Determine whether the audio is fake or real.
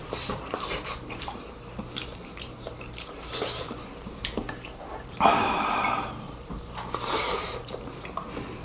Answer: fake